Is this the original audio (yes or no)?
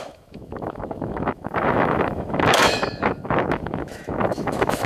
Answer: no